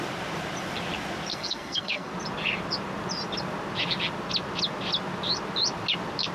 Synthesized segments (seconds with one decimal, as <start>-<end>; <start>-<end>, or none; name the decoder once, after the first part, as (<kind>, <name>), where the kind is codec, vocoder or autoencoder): 1.3-2.1 (codec, SNAC)